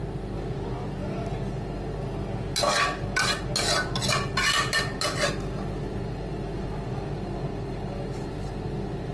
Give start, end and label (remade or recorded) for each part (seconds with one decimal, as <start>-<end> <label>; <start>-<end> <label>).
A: 0.0-9.1 recorded